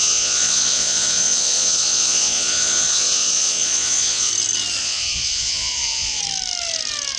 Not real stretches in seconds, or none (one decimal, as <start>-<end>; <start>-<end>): 0.0-4.3; 4.8-6.2